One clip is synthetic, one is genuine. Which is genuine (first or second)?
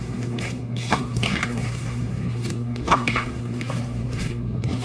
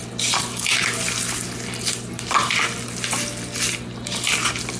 second